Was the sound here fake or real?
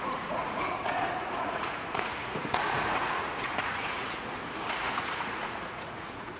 fake